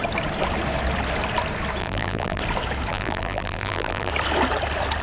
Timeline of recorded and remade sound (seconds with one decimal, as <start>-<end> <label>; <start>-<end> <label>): 0.0-1.8 recorded; 1.8-2.4 remade; 2.4-2.9 recorded; 2.9-4.1 remade; 4.1-5.0 recorded